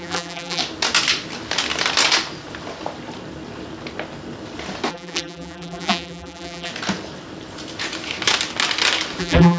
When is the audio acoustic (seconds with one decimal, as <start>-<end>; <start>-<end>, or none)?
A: 0.6-4.9; 6.7-9.2